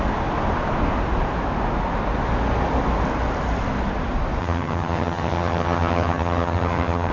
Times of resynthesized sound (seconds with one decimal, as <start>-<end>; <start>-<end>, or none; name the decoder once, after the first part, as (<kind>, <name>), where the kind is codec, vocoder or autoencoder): 4.4-7.1 (vocoder, HiFi-GAN)